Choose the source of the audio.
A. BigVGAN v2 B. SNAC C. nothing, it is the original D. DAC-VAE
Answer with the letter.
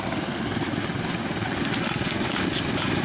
C